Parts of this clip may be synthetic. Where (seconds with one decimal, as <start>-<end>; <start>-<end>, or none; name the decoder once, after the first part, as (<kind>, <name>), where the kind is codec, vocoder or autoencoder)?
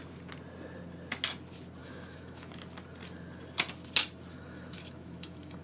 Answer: 1.8-2.5 (autoencoder, DAC-VAE); 4.3-5.6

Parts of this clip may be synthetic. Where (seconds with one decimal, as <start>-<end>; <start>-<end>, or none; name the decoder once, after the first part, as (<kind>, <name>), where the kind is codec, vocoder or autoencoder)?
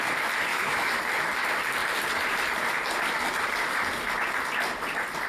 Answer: 0.5-1.0 (autoencoder, DAC-VAE)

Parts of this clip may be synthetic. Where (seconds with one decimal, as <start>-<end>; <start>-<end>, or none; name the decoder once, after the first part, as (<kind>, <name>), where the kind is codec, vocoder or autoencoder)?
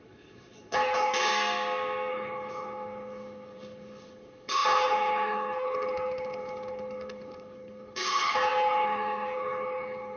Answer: 0.0-1.3 (codec, HILCodec); 2.1-10.2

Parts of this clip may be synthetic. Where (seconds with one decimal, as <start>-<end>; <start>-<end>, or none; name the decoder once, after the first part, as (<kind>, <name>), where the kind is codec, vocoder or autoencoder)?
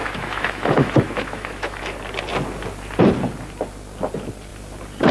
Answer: 0.0-1.8 (autoencoder, DAC-VAE)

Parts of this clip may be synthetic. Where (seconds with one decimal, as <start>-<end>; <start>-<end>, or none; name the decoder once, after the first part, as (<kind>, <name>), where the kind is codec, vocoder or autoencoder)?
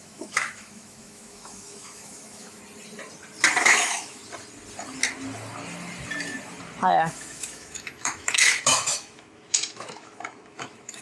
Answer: 0.0-2.6 (autoencoder, DAC-VAE); 3.6-4.2; 7.1-11.0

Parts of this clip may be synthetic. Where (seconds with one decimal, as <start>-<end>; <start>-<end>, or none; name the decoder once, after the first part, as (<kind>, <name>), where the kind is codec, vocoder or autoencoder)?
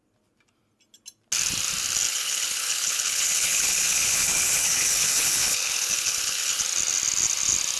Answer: 2.1-6.6 (codec, HILCodec)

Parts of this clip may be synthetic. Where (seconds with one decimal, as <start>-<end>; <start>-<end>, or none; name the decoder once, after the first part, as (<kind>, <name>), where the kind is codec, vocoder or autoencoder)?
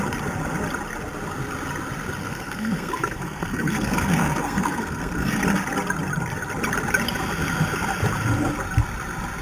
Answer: 2.2-5.4 (codec, SNAC)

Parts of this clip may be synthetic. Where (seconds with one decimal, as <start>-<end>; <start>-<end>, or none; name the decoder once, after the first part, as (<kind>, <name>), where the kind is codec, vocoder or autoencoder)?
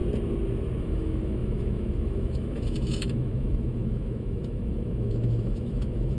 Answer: 0.8-6.2 (autoencoder, DAC-VAE)